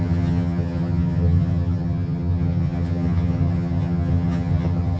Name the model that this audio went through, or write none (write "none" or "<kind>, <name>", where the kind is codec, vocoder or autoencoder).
vocoder, HiFi-GAN